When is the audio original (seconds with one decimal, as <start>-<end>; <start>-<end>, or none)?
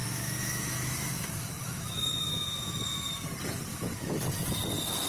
3.1-3.7; 4.2-5.1